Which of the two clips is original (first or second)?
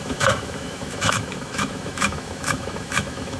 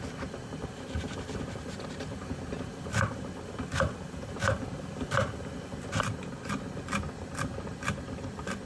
second